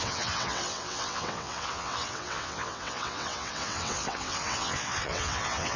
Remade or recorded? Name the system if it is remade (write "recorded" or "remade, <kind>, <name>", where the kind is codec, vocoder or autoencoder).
remade, vocoder, WaveNeXt